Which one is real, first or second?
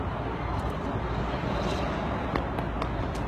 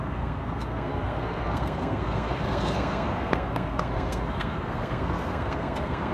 first